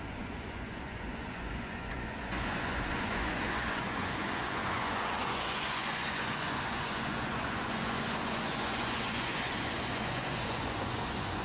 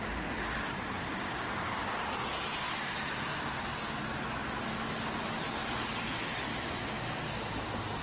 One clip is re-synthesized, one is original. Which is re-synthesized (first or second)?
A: first